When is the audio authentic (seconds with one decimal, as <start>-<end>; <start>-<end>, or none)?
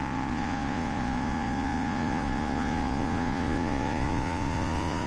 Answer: none